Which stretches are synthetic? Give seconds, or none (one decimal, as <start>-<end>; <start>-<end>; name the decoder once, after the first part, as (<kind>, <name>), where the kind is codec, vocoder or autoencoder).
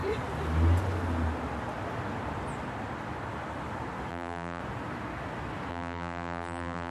4.1-4.6 (vocoder, BigVGAN v2); 5.7-6.9